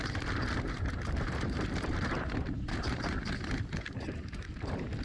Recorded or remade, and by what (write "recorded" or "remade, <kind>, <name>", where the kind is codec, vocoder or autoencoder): remade, vocoder, BigVGAN v2